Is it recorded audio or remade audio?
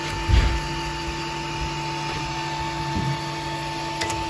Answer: recorded